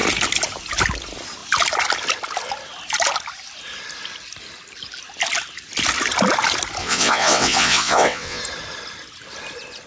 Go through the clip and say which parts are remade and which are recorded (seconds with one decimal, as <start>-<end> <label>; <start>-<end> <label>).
0.0-6.8 recorded; 6.8-8.4 remade; 8.4-9.9 recorded